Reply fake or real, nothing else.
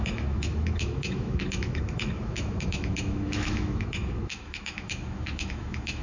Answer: fake